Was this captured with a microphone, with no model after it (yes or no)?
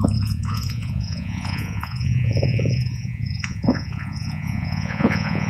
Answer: no